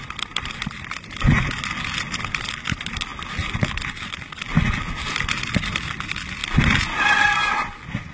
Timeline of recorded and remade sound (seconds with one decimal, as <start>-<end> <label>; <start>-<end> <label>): 0.0-8.1 recorded